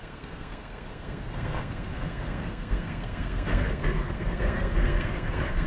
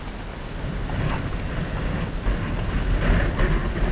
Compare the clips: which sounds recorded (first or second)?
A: second